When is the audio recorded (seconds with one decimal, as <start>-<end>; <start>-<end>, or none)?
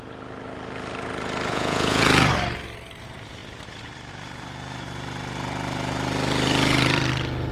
0.0-1.5; 2.0-7.5